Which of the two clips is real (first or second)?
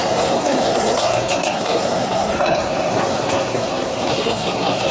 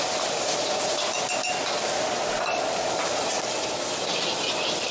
second